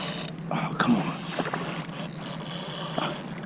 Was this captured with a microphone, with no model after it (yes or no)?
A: yes